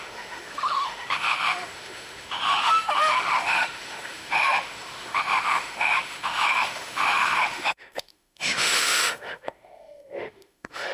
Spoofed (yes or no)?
yes